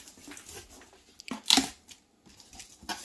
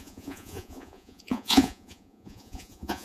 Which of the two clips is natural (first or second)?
first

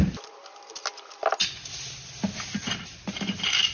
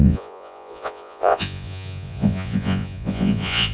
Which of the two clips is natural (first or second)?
first